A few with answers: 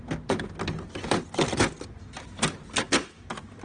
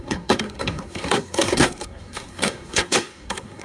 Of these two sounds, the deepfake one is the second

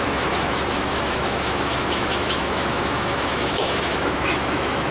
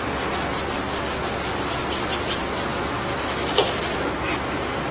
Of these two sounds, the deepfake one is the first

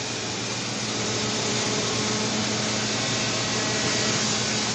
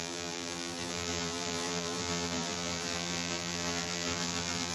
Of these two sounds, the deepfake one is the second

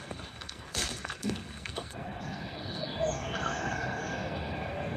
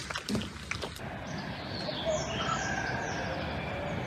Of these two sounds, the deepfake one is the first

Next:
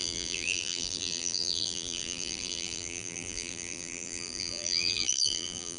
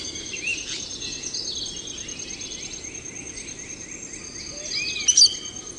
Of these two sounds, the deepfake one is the first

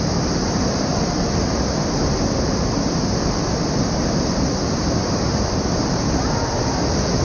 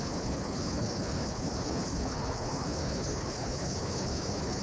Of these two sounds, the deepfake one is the second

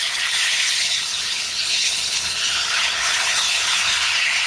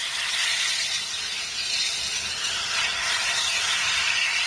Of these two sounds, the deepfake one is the first